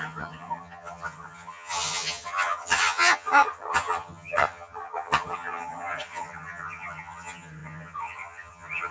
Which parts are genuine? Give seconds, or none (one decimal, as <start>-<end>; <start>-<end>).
none